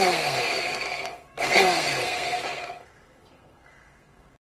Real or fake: fake